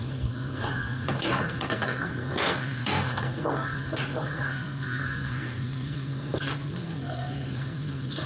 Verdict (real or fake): fake